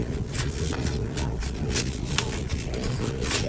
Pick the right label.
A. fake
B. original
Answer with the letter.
A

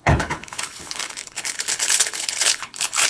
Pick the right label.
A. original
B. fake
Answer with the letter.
B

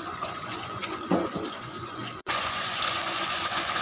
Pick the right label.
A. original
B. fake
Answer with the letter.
B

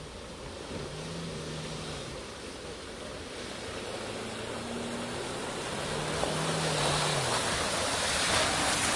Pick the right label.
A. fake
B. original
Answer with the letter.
B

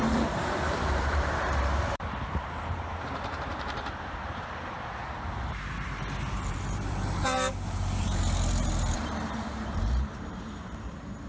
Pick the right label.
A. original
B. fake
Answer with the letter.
B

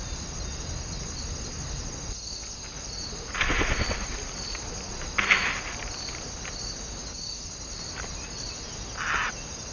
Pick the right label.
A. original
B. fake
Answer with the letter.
A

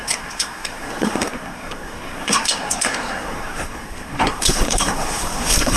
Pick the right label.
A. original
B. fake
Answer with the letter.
B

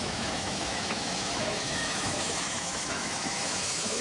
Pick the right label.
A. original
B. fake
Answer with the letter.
B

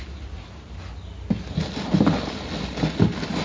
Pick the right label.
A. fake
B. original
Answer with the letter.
B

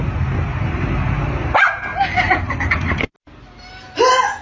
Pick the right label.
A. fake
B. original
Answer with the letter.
B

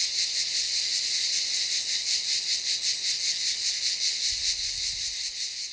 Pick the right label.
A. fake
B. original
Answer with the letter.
B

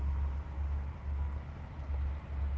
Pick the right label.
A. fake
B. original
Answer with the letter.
B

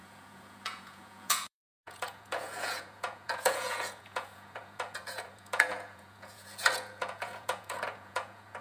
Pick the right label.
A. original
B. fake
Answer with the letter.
B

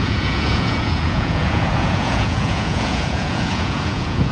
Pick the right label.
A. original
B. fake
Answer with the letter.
B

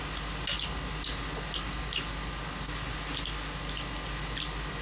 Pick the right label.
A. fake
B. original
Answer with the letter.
B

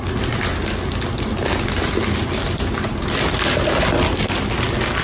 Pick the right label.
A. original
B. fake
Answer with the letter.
A